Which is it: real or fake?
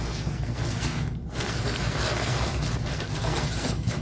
fake